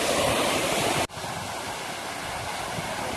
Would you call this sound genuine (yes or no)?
yes